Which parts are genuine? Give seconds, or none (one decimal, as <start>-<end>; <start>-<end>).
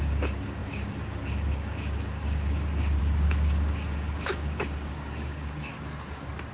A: 5.7-6.5